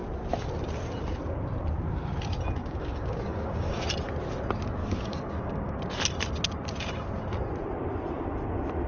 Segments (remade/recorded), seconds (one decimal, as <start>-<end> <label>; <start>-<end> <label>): 0.0-2.6 recorded; 2.6-3.8 remade; 3.8-4.8 recorded; 4.8-5.8 remade; 5.8-8.9 recorded